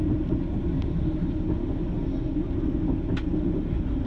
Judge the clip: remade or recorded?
recorded